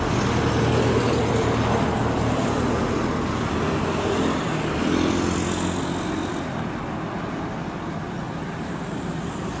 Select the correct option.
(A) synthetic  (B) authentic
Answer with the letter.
B